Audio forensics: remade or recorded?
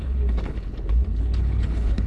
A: remade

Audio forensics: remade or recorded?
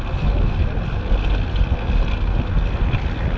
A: recorded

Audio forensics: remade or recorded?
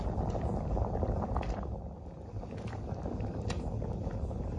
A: recorded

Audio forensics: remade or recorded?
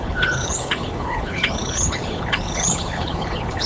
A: remade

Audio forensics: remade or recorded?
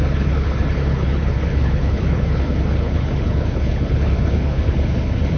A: remade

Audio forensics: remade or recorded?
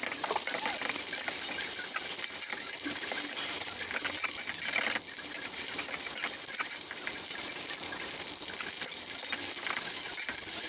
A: recorded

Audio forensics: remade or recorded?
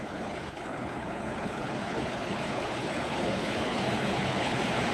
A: remade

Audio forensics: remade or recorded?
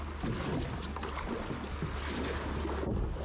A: recorded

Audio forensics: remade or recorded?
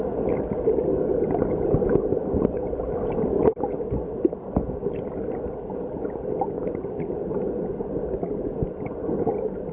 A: recorded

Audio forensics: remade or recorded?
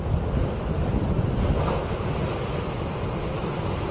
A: recorded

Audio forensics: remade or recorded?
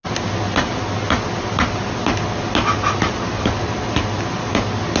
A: recorded